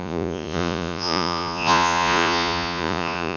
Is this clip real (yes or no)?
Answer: no